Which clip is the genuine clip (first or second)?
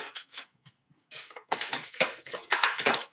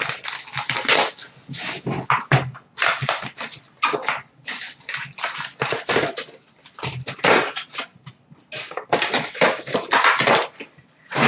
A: second